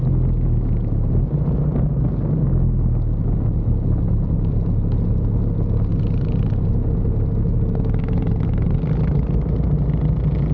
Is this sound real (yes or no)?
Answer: yes